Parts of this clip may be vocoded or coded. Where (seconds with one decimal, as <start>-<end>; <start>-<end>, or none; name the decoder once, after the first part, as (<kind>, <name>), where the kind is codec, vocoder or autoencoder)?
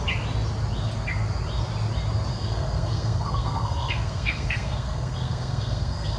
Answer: 2.3-6.2 (codec, SNAC)